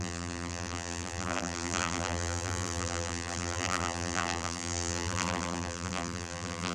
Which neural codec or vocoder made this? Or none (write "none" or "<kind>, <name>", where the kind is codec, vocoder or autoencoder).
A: vocoder, BigVGAN v2